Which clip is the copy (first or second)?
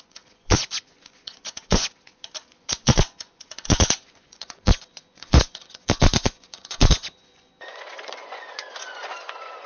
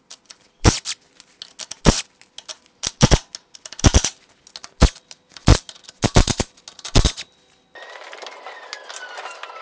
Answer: first